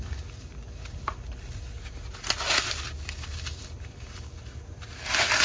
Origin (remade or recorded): recorded